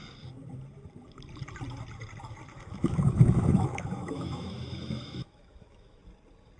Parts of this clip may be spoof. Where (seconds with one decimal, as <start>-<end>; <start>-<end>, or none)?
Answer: 2.5-6.0